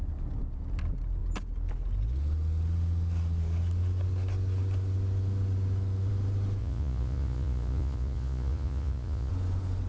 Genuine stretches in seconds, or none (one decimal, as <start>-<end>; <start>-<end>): 0.0-6.6; 9.3-9.9